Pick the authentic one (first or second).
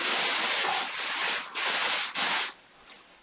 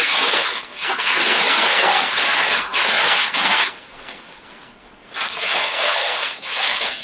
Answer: first